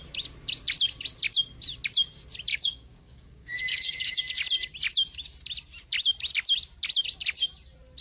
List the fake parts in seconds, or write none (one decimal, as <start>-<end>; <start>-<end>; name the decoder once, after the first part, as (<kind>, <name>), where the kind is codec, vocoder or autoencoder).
2.5-4.2 (codec, DAC)